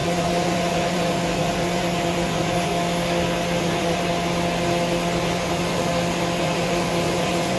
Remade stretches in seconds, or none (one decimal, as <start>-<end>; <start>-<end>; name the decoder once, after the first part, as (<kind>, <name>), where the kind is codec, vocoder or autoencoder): 0.0-2.7 (vocoder, Vocos); 3.6-4.1; 5.2-5.9; 6.4-7.6